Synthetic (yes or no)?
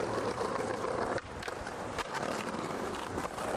yes